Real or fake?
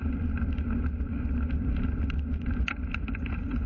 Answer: real